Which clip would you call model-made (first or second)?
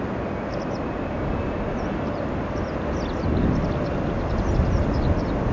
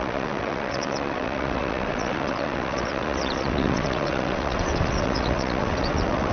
second